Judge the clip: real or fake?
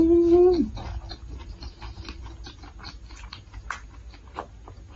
real